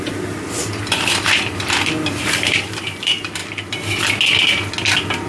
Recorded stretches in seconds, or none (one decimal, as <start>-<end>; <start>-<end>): 3.4-5.3